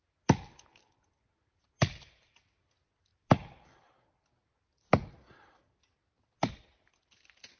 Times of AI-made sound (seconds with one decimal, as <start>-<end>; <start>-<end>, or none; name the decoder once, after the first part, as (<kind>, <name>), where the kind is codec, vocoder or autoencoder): none